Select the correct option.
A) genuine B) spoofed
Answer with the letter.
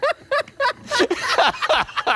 A